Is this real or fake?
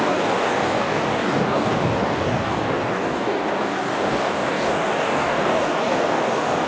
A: fake